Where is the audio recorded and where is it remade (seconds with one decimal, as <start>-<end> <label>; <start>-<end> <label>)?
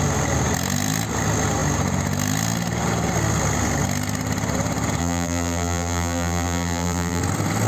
0.0-5.0 recorded; 5.0-7.2 remade; 7.2-7.7 recorded